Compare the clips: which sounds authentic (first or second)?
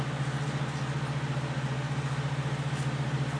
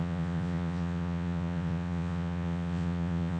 first